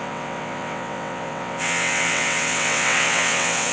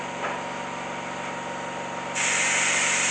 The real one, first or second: second